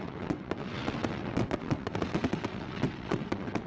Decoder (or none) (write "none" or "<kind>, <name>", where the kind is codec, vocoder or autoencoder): vocoder, WaveNeXt